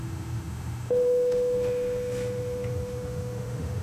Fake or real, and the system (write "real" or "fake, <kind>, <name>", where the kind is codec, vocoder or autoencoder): fake, autoencoder, DAC-VAE